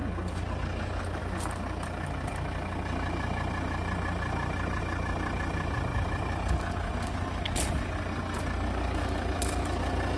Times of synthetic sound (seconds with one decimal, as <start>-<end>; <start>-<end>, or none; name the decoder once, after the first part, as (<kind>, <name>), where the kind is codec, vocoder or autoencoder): none